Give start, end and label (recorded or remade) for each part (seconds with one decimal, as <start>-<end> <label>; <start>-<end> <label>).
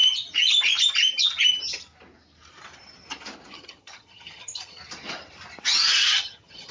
0.0-3.5 recorded; 3.5-4.8 remade; 4.8-5.9 recorded; 5.9-6.7 remade